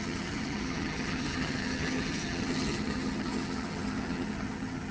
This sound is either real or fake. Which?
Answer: fake